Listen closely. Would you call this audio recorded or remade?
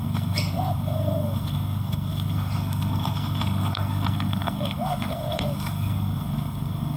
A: remade